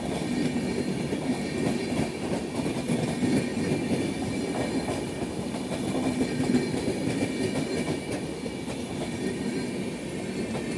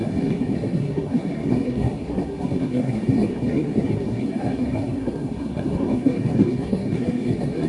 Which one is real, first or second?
first